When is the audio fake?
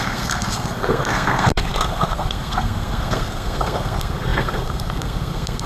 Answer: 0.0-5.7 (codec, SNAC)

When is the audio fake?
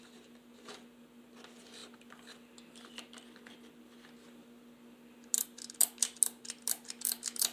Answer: none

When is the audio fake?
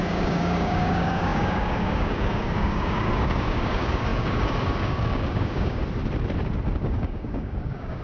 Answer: 0.0-5.8 (codec, DAC); 6.8-8.0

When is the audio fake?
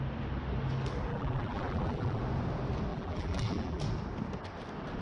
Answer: 1.1-2.2 (vocoder, BigVGAN v2); 2.9-3.8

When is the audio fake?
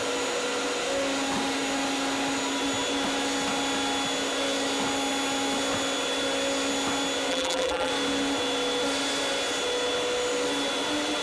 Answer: 7.3-7.9 (vocoder, BigVGAN v2)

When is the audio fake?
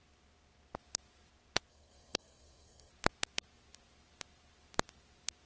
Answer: 1.7-2.9 (codec, SNAC)